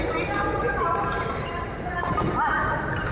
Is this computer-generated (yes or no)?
yes